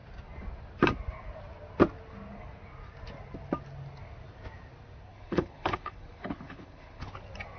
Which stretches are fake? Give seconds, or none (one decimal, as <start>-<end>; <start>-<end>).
5.1-7.1

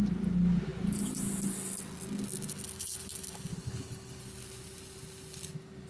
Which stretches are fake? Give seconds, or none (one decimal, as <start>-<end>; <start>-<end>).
3.5-4.2

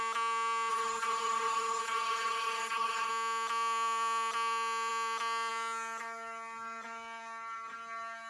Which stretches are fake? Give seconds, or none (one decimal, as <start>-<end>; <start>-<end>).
0.7-3.1

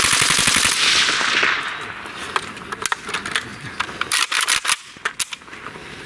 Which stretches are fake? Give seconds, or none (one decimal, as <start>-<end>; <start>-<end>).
none

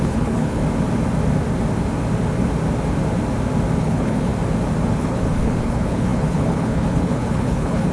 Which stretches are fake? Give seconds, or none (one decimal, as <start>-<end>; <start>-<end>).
0.0-0.6; 3.8-4.3; 4.9-7.9